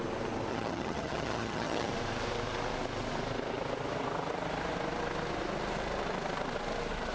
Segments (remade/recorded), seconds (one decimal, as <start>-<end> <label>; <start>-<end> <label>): 0.0-0.5 recorded; 0.5-1.9 remade; 1.9-7.1 recorded